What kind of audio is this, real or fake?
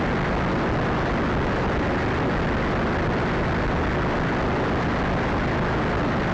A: real